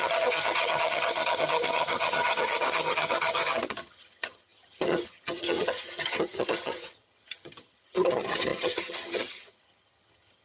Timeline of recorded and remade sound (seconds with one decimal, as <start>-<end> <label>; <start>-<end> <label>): 0.0-10.4 remade